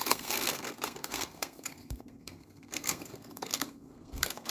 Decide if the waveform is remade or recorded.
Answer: remade